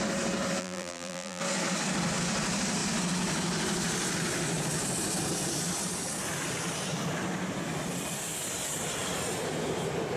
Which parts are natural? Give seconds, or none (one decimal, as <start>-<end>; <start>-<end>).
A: 0.0-0.6; 1.4-10.2